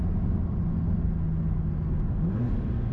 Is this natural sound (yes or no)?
yes